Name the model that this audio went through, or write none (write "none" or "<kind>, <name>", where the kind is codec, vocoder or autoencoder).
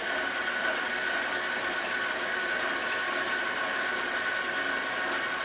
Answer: none